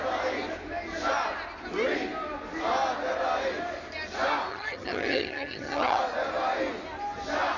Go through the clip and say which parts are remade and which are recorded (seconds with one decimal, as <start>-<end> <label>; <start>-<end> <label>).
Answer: 0.0-4.5 recorded; 4.5-6.0 remade; 6.0-7.6 recorded